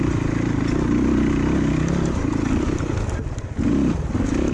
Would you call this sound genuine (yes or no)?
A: yes